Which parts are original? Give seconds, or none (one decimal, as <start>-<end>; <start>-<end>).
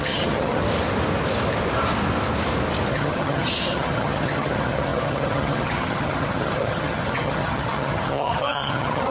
0.6-2.9